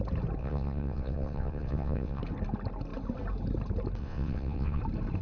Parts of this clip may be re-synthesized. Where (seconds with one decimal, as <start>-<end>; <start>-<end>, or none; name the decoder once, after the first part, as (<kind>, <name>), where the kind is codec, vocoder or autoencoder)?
0.4-2.2 (vocoder, WaveNeXt); 4.0-4.8